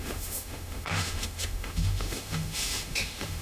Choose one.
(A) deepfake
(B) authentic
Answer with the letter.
A